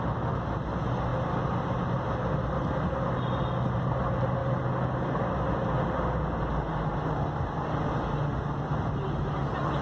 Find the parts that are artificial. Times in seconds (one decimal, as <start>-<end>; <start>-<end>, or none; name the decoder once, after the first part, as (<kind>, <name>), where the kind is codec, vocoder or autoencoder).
none